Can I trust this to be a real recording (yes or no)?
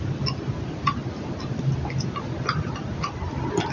yes